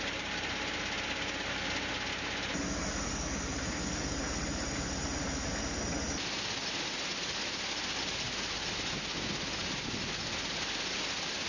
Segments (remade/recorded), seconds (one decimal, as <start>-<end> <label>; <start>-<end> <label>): 0.0-11.5 recorded